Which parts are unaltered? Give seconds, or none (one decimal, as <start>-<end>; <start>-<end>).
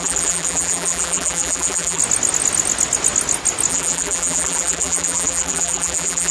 2.0-3.7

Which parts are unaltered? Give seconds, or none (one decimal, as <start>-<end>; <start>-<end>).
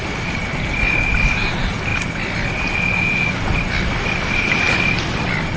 0.0-5.6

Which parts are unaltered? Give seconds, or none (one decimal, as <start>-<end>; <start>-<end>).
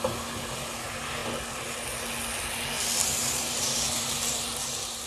0.0-3.0; 3.8-5.1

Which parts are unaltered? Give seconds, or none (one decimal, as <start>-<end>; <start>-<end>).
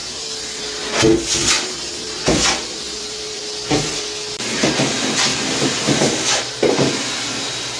0.6-1.9; 3.4-5.3; 6.9-7.8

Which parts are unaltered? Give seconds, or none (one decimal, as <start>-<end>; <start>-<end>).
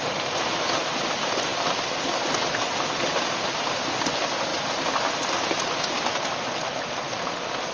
1.5-3.2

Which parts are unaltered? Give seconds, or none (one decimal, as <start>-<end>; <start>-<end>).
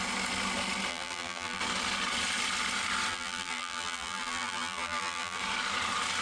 0.0-0.9; 1.6-3.1; 5.4-6.2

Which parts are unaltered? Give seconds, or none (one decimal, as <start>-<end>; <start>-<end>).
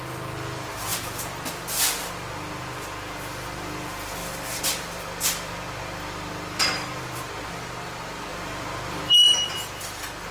0.0-4.2; 7.5-8.3; 9.8-10.3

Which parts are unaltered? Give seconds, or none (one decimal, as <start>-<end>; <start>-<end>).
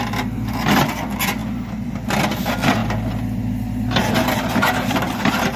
0.0-1.4; 2.2-5.6